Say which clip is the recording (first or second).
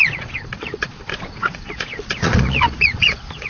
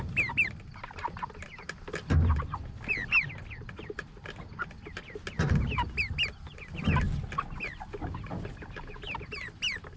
second